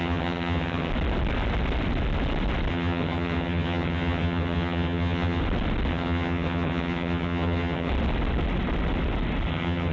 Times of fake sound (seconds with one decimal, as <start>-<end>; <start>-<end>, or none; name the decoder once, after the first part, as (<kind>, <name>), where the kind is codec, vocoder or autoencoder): 0.0-0.9 (vocoder, HiFi-GAN); 2.7-5.4; 5.9-7.9; 9.5-9.9